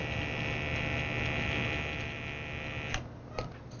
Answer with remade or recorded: recorded